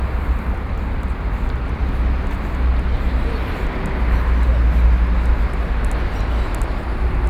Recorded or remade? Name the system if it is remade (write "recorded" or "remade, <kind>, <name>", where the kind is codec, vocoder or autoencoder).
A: recorded